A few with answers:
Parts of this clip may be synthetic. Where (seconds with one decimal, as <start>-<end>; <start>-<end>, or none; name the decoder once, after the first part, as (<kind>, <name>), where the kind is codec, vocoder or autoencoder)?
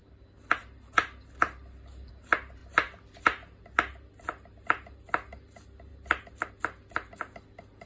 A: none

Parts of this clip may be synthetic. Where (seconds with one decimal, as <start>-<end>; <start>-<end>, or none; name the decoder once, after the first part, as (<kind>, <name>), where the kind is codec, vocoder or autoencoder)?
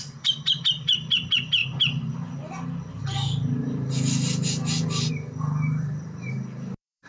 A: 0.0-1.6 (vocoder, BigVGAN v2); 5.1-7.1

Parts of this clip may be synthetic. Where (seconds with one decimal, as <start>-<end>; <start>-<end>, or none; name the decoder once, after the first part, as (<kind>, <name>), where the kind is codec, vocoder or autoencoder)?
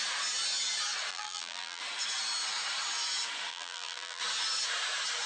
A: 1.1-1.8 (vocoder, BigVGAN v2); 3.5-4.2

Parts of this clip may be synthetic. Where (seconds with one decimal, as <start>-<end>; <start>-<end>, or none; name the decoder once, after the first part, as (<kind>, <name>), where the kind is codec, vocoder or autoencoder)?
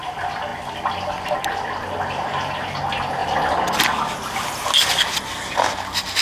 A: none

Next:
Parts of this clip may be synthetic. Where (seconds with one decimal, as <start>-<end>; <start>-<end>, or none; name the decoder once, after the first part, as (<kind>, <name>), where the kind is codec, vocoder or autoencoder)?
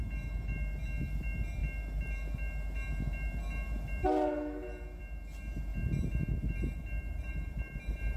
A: none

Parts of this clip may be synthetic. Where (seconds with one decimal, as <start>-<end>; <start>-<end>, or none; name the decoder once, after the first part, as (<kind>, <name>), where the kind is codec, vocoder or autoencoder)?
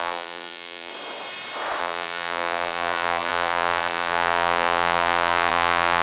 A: 0.0-0.9 (vocoder, BigVGAN v2); 1.8-6.0